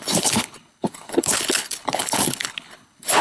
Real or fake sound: fake